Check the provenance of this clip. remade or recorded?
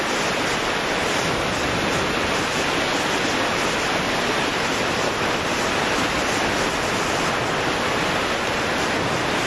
recorded